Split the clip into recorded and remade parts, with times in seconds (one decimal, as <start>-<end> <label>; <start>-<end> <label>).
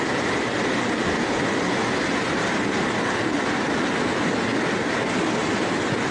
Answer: 0.0-6.1 recorded